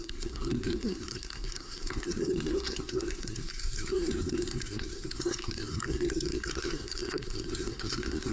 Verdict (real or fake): fake